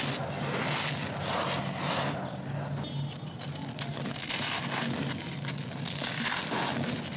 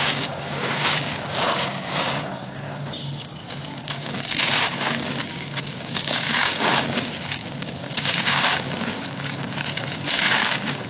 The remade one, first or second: second